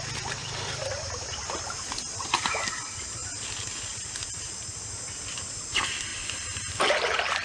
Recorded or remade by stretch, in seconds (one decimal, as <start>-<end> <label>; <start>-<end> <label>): 0.0-6.1 recorded; 6.1-6.7 remade; 6.7-7.4 recorded